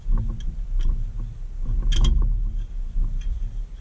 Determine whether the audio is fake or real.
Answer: real